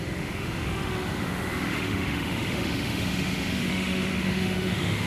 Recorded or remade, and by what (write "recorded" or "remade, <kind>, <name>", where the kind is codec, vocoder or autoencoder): remade, autoencoder, DAC-VAE